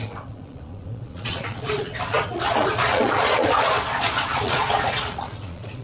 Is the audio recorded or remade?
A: remade